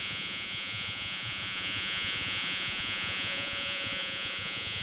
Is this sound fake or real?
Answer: fake